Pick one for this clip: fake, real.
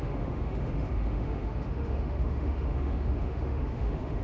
fake